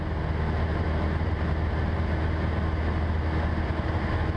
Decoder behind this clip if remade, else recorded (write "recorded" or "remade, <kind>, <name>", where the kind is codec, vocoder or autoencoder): recorded